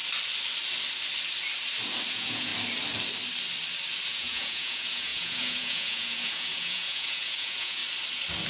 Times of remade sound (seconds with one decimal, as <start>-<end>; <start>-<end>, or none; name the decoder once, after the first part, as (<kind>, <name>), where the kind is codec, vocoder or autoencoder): 2.1-2.5 (vocoder, Vocos); 4.1-7.8